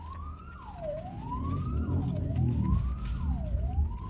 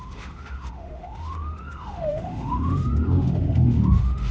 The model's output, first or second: second